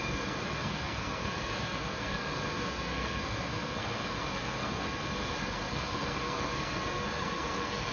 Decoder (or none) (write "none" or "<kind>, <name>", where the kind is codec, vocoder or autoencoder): codec, SNAC